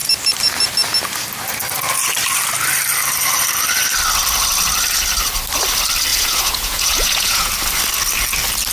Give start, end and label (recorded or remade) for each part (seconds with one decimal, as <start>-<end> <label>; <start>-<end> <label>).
0.0-6.1 recorded; 6.1-7.5 remade; 7.5-8.7 recorded

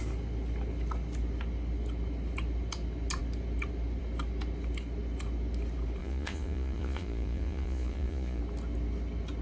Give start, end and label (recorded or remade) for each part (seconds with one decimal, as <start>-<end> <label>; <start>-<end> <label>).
0.0-6.0 recorded; 6.0-8.4 remade; 8.4-9.4 recorded

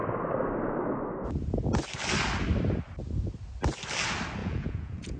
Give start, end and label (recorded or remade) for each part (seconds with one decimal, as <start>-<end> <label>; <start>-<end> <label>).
0.0-4.4 recorded; 4.4-5.2 remade